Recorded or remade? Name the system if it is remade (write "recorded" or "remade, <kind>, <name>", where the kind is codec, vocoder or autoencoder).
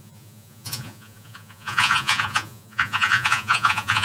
remade, vocoder, Vocos